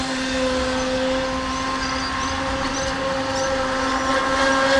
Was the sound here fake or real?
real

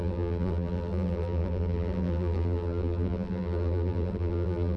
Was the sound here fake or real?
fake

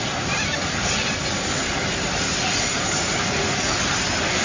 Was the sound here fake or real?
real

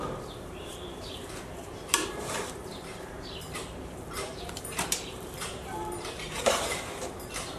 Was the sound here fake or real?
fake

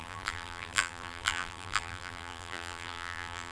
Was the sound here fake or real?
fake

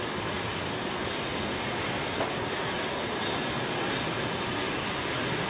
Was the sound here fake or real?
real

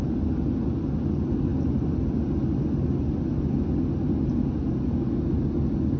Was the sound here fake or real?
real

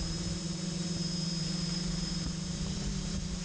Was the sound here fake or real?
fake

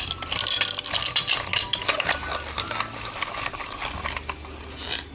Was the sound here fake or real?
real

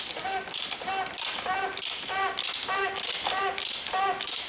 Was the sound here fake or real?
real